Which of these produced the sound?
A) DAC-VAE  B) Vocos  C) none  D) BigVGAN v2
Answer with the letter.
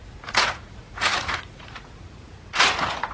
B